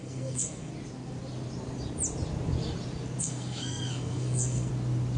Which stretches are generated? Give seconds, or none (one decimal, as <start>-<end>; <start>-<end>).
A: 0.0-0.7; 3.2-4.7